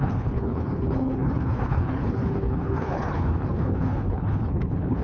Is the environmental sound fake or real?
fake